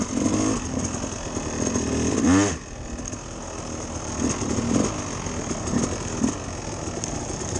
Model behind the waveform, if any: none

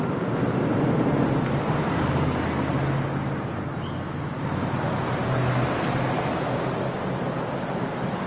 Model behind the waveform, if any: none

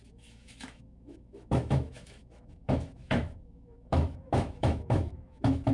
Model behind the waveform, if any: autoencoder, DAC-VAE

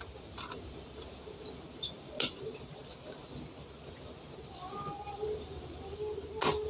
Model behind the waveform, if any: none